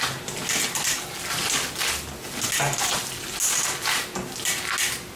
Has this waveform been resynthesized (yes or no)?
no